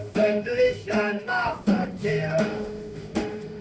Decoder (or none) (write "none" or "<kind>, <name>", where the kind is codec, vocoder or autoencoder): autoencoder, DAC-VAE